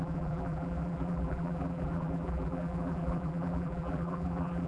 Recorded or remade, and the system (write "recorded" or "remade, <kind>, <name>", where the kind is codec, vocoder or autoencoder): remade, vocoder, BigVGAN v2